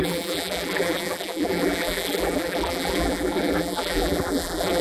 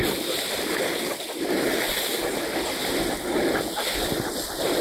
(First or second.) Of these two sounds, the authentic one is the second